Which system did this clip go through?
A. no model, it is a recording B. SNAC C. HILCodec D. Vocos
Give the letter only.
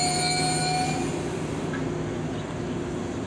A